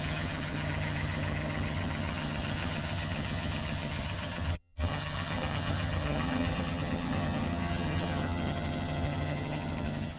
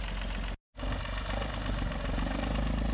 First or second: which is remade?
first